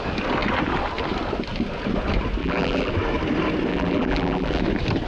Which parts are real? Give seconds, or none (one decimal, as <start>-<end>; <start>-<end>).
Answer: 0.0-2.4; 2.9-3.7; 4.6-5.1